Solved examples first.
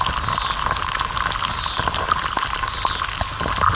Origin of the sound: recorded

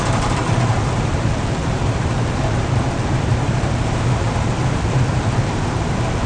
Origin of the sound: remade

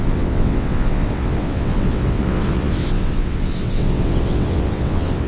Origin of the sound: remade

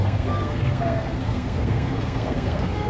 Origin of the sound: remade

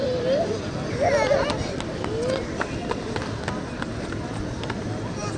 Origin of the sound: recorded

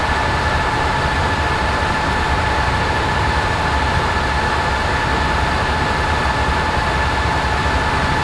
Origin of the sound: recorded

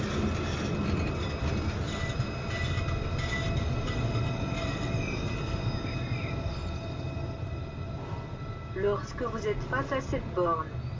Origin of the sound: recorded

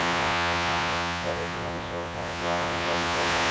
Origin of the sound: remade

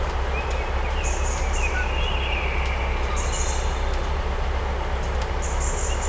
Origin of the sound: recorded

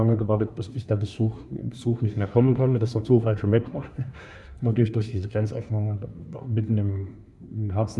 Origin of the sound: remade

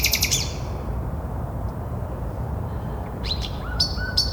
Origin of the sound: remade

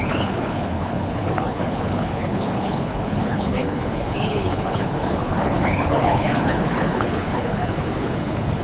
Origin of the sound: remade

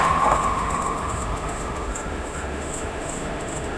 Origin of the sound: remade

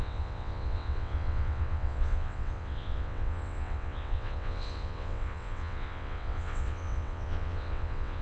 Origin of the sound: remade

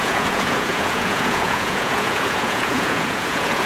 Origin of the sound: remade